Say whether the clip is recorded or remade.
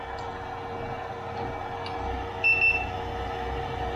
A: recorded